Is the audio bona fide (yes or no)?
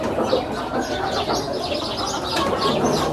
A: yes